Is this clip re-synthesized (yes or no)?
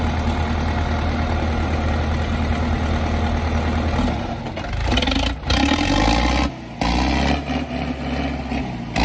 no